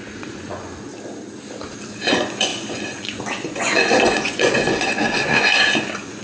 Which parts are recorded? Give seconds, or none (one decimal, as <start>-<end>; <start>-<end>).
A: 0.9-2.0